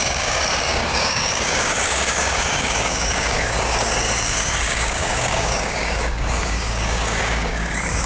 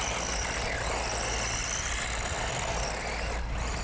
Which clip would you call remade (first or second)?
first